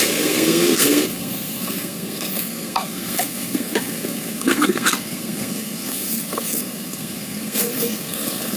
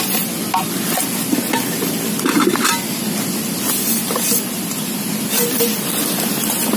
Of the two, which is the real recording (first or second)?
second